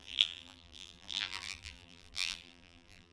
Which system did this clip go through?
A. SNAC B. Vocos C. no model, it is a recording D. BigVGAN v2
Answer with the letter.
D